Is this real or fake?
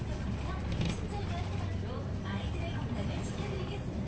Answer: real